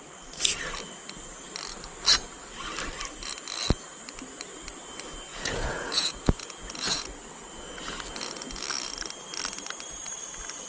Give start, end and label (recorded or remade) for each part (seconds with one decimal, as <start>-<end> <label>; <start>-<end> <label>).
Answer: 0.0-5.3 recorded; 5.3-7.1 remade; 7.1-10.7 recorded